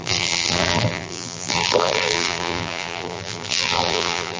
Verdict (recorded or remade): remade